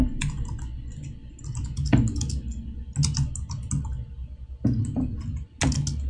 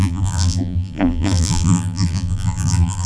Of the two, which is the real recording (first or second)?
first